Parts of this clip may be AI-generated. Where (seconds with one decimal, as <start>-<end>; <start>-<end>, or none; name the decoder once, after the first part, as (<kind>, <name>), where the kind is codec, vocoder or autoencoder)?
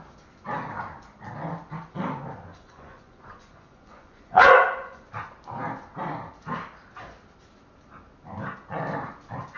2.5-5.1 (vocoder, Vocos)